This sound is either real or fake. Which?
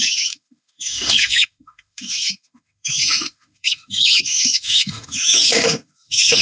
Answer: fake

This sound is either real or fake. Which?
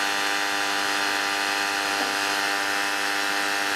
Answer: real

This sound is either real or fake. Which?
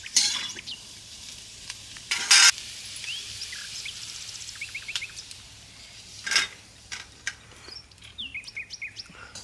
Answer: fake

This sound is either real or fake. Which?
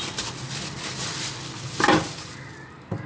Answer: real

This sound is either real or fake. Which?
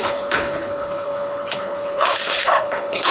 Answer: fake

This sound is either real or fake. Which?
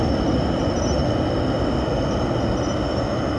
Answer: real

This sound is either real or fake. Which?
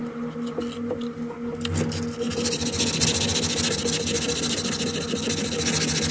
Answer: real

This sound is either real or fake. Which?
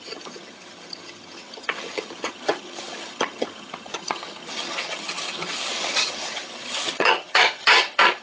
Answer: fake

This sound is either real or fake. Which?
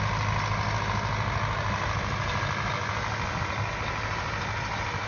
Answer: real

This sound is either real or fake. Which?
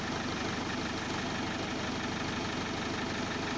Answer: real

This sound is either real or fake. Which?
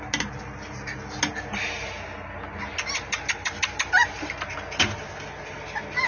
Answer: real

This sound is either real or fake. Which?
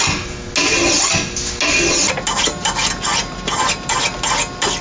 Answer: real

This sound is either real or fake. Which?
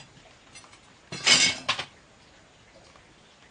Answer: real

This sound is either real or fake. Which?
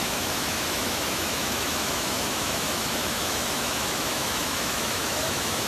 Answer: fake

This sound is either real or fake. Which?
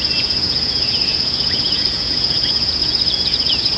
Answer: fake